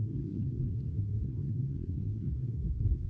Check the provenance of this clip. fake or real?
fake